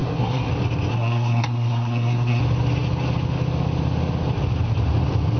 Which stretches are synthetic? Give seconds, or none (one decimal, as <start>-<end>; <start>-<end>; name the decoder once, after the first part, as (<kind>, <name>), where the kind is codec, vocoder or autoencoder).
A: 0.0-0.5 (codec, SNAC); 0.9-2.4